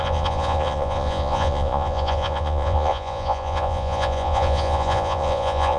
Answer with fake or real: fake